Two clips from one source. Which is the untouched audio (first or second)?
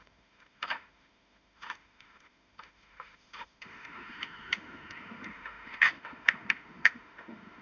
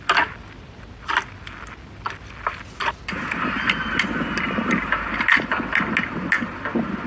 second